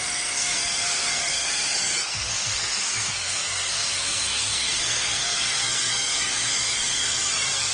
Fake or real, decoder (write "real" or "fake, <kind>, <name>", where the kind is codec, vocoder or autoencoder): fake, codec, SNAC